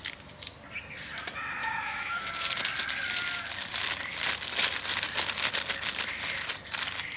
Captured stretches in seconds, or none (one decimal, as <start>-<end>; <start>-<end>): 0.0-1.6; 2.3-7.2